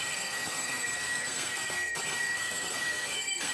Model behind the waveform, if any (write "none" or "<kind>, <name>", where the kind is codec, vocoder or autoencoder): codec, SNAC